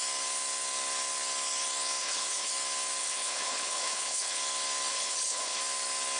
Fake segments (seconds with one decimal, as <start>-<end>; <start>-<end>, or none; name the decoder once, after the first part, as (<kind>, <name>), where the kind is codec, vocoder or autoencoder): 2.0-2.5 (codec, HILCodec); 3.0-4.4; 4.9-5.6